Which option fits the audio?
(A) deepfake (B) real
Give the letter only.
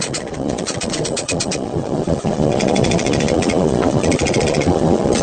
A